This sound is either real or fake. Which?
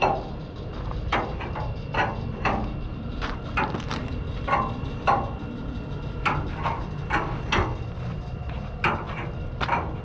real